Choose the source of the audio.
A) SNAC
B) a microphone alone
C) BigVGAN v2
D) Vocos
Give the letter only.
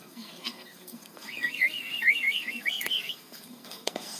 A